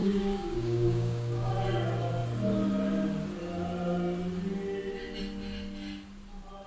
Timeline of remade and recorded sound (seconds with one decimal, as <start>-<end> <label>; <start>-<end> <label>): 0.0-1.5 remade; 1.5-6.7 recorded

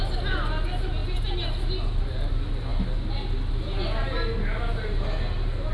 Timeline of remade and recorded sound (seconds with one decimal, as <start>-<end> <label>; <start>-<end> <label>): 0.0-5.7 recorded